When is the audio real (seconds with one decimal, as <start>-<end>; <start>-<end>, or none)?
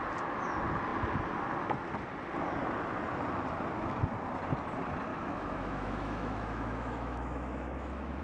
0.0-5.1